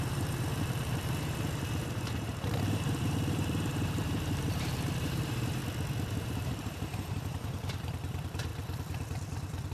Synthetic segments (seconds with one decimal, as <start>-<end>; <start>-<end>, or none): 0.0-5.6; 6.1-8.5